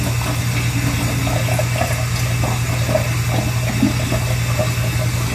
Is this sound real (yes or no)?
yes